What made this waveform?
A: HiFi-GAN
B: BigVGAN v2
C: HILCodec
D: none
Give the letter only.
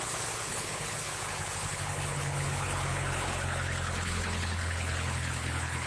C